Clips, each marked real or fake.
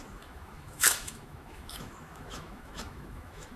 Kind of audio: fake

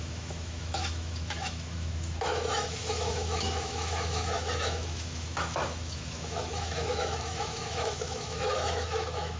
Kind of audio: fake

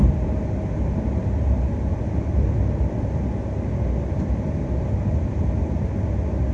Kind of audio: real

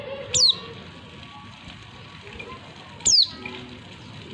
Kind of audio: real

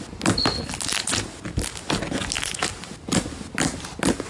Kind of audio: real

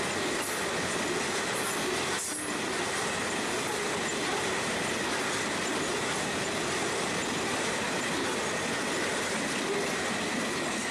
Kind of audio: real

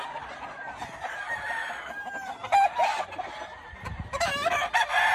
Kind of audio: real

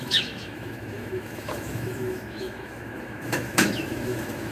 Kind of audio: fake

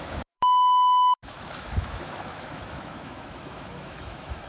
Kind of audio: fake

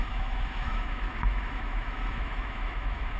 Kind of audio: fake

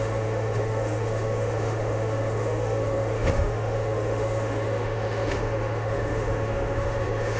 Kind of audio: fake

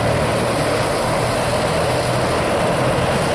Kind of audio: real